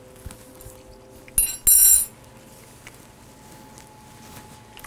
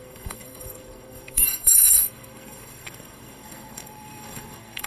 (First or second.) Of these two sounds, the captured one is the first